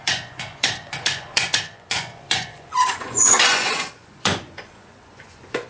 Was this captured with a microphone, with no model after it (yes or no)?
no